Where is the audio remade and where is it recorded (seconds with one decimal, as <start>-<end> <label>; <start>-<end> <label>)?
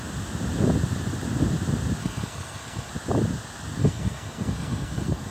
0.0-2.0 recorded; 2.0-2.9 remade; 2.9-3.8 recorded; 3.8-5.3 remade